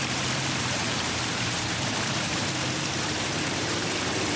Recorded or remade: remade